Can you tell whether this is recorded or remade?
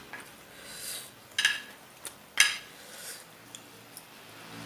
recorded